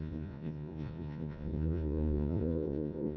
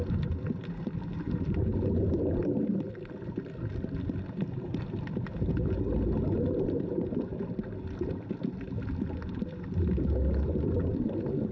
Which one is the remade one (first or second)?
first